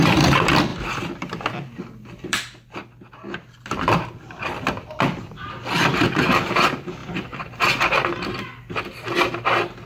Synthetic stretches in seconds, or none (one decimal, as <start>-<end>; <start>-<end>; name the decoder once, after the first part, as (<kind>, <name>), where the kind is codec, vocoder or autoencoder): 0.7-5.2 (vocoder, BigVGAN v2)